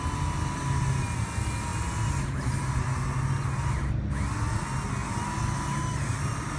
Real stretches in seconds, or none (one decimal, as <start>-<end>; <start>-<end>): 0.0-6.6

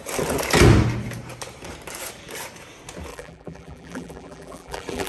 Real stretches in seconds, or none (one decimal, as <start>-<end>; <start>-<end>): 0.0-3.1

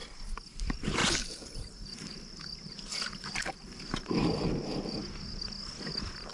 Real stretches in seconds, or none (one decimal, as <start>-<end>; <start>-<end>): 0.0-0.5; 1.0-1.7; 5.0-6.3

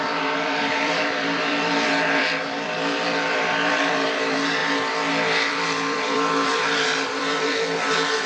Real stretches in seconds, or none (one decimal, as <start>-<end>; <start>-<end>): none

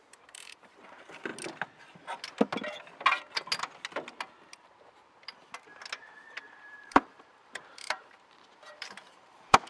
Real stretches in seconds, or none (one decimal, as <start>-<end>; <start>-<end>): 1.3-6.4

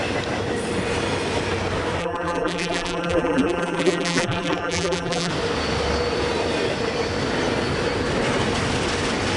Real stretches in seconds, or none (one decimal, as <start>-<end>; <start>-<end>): 0.0-2.0; 5.3-9.4